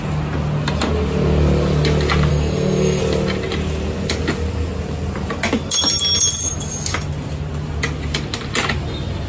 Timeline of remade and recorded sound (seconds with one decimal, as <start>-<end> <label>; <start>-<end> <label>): 0.0-2.3 recorded; 2.3-3.0 remade; 3.0-9.3 recorded